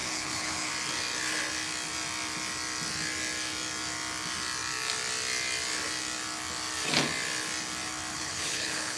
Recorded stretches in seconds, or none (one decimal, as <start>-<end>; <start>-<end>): 0.7-8.1

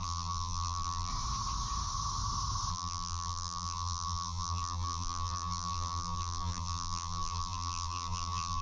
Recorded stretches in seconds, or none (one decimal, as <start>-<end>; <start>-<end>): 1.1-2.7

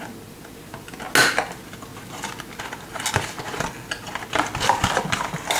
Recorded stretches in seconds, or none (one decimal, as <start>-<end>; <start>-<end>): 0.0-5.6

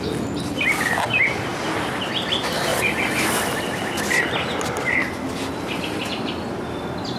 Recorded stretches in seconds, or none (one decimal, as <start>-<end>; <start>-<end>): 0.0-7.2

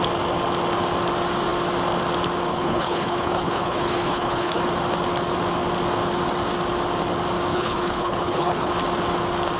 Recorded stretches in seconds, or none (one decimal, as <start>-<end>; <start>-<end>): 0.0-2.5; 4.6-7.5; 8.7-9.6

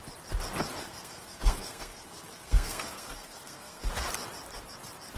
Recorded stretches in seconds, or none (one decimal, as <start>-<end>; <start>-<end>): 0.0-0.8; 3.8-5.2

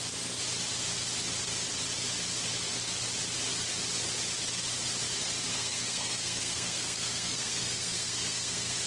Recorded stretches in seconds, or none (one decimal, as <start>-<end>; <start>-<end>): 0.0-5.5

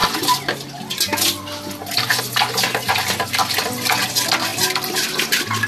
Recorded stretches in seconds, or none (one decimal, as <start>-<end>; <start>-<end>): 0.0-5.7